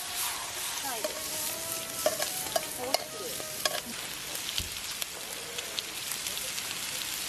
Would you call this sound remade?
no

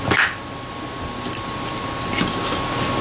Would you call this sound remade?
no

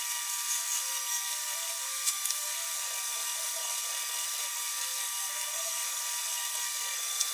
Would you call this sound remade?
yes